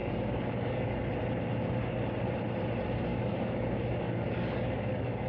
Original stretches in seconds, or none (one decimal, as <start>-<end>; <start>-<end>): 1.1-3.1